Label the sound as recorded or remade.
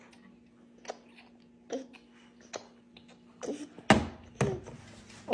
recorded